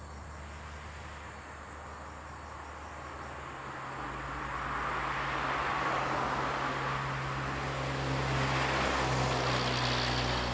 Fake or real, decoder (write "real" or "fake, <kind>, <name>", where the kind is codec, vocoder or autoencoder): real